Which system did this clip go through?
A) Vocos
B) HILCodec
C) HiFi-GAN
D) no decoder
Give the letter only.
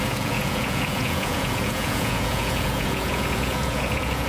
A